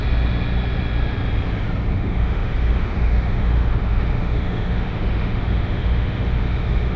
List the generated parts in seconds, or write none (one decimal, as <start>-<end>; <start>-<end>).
1.9-7.0